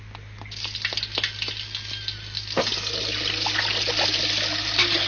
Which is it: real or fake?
real